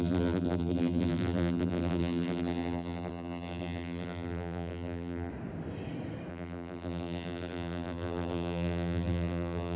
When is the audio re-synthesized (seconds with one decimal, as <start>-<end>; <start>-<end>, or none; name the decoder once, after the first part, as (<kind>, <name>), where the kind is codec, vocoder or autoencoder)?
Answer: 0.0-5.3 (vocoder, BigVGAN v2); 6.3-9.8